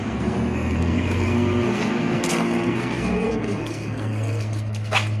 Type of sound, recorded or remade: remade